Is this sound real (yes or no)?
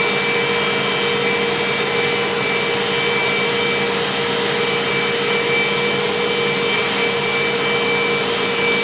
yes